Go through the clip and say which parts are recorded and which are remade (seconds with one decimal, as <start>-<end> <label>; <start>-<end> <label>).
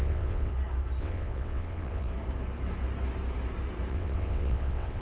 0.0-0.5 remade; 0.5-1.0 recorded; 1.0-2.1 remade; 2.1-3.9 recorded; 3.9-5.0 remade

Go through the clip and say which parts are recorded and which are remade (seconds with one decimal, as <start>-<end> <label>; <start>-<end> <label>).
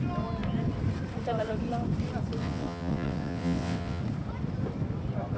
0.0-2.4 recorded; 2.4-4.0 remade; 4.0-5.4 recorded